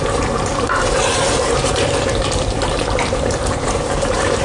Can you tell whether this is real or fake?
fake